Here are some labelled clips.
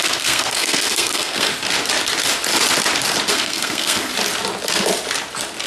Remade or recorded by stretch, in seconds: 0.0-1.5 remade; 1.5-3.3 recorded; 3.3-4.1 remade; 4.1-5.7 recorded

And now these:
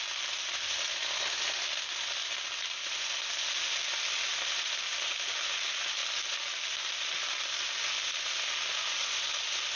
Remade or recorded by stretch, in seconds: 0.0-9.8 recorded

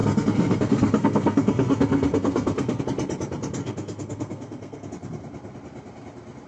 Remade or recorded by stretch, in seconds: 0.0-2.8 remade; 2.8-3.6 recorded; 3.6-4.9 remade; 4.9-6.5 recorded

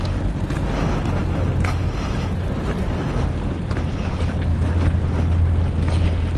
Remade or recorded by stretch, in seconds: 0.0-6.4 recorded

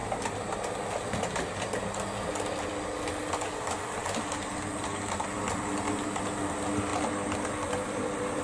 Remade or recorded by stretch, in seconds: 0.0-8.4 recorded

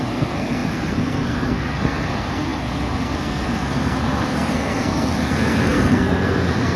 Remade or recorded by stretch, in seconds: 0.0-6.8 remade

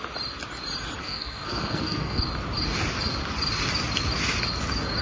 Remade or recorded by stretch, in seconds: 0.0-1.0 recorded; 1.0-2.2 remade; 2.2-5.0 recorded